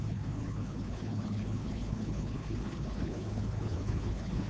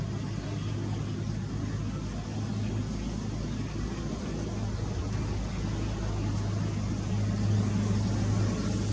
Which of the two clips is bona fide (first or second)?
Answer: second